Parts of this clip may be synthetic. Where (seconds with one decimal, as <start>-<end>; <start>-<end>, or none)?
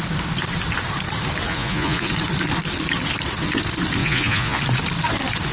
1.5-2.1; 4.0-4.6